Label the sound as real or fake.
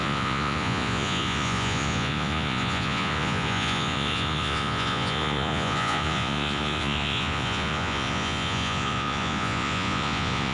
fake